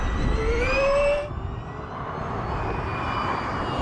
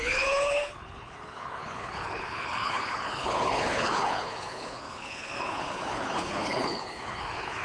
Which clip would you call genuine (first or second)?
first